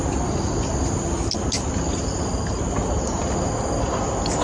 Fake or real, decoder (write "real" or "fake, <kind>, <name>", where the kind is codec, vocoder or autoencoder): real